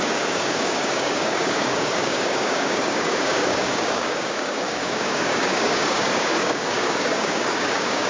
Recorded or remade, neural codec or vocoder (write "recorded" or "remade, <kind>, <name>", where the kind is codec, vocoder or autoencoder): remade, codec, DAC